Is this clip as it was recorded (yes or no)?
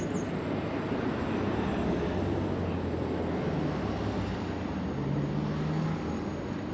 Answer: yes